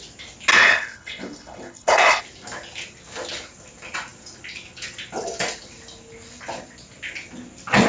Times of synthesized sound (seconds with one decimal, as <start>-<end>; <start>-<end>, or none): 0.5-2.2